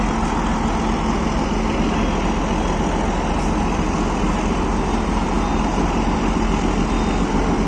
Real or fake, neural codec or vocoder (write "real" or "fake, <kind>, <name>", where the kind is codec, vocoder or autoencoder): real